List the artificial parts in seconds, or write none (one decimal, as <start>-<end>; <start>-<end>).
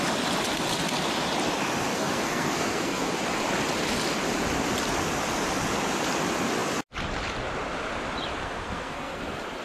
1.9-3.1; 8.4-9.2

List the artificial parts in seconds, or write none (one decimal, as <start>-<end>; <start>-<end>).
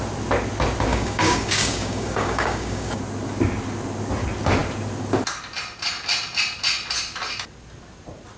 0.9-3.0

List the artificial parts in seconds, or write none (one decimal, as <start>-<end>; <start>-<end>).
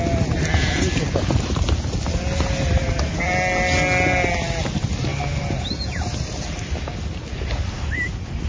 none